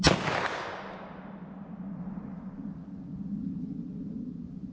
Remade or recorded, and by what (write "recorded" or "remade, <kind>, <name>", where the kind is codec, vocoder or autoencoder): recorded